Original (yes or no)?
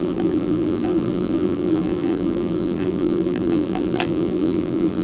no